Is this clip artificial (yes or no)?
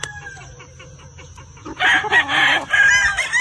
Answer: no